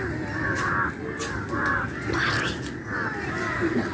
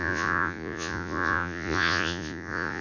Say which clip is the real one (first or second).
first